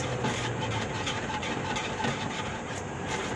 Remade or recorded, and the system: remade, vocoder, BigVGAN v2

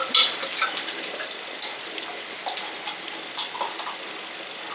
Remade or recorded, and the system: recorded